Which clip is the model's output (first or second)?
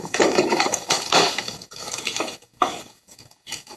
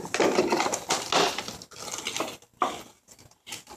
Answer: first